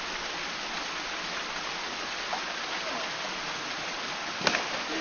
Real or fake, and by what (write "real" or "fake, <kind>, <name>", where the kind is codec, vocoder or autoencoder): real